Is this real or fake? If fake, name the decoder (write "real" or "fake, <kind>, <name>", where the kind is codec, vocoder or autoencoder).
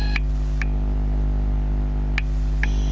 real